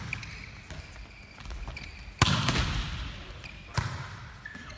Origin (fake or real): real